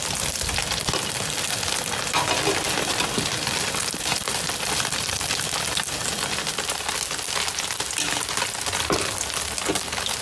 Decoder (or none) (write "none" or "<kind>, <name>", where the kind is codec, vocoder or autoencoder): none